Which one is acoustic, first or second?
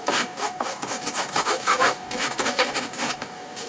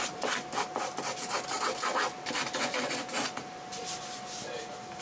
second